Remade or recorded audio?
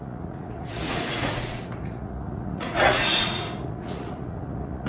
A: remade